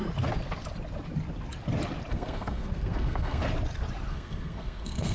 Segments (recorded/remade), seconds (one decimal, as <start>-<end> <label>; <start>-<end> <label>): 0.0-2.1 recorded; 2.1-3.4 remade; 3.4-4.1 recorded; 4.1-5.1 remade